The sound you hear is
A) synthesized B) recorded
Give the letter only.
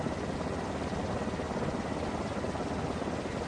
B